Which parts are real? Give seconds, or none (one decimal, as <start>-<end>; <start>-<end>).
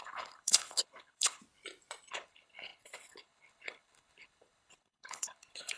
1.4-2.1